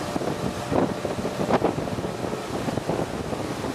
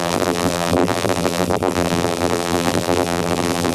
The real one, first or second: first